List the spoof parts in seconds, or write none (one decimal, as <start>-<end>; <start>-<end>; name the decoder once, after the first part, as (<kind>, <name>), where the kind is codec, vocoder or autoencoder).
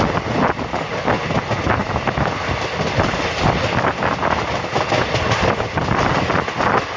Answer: none